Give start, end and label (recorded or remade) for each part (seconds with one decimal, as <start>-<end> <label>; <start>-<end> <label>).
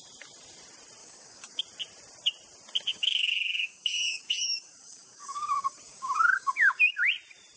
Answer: 0.0-1.0 recorded; 1.0-1.6 remade; 1.6-2.9 recorded; 2.9-7.1 remade; 7.1-7.6 recorded